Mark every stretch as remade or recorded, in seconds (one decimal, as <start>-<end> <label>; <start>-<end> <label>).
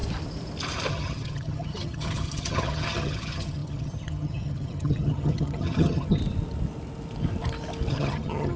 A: 0.0-0.9 recorded; 0.9-6.2 remade; 6.2-7.9 recorded; 7.9-8.6 remade